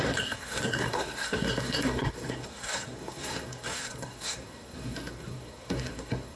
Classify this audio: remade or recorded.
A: remade